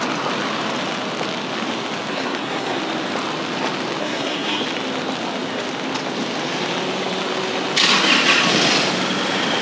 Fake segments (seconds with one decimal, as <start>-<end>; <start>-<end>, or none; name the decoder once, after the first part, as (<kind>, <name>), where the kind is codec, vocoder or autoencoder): 2.1-2.8 (codec, SNAC); 4.0-4.6